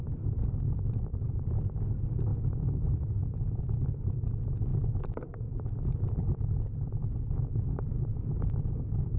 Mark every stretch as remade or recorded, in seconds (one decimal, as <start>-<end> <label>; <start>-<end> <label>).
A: 0.0-9.2 recorded

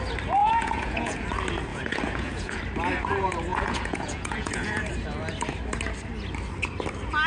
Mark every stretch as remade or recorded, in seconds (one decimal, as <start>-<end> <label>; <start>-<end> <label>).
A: 0.0-0.4 recorded; 0.4-1.2 remade; 1.2-1.7 recorded; 1.7-2.6 remade; 2.6-3.5 recorded; 3.5-4.9 remade; 4.9-7.3 recorded